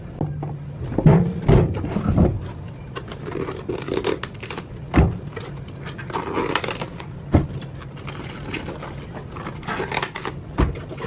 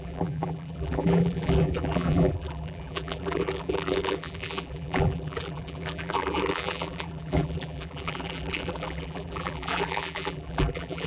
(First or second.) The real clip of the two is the first